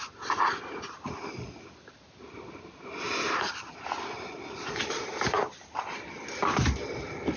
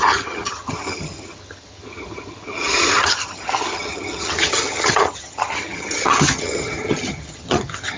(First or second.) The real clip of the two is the first